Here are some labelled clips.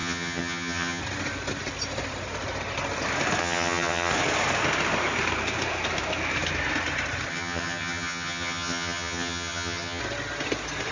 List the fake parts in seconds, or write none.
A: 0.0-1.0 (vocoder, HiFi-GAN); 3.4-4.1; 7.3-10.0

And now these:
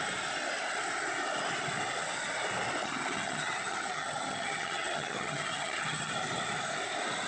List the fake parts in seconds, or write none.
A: 2.8-6.1 (vocoder, HiFi-GAN)

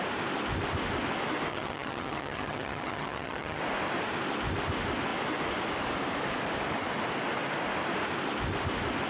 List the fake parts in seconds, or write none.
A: 1.5-3.6 (vocoder, HiFi-GAN)